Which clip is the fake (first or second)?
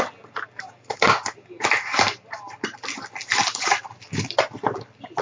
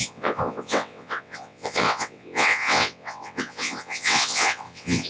second